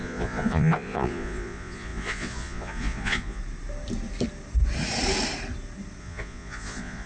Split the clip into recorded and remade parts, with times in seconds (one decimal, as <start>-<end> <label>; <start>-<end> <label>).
0.0-3.4 remade; 3.4-6.0 recorded; 6.0-7.1 remade